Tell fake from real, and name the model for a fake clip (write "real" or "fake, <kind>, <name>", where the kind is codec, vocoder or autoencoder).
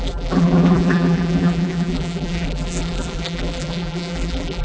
fake, vocoder, BigVGAN v2